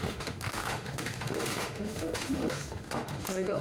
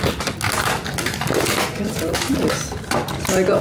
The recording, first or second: second